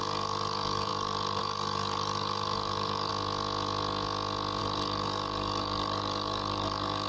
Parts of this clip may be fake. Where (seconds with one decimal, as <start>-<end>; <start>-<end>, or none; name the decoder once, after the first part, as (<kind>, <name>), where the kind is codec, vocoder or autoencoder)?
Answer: 0.0-3.1 (codec, DAC); 4.6-7.1